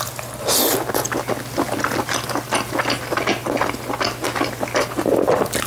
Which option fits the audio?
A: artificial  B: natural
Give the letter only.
B